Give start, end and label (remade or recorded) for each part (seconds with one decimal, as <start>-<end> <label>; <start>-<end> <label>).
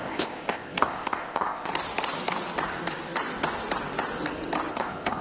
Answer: 0.0-1.7 remade; 1.7-4.7 recorded; 4.7-5.2 remade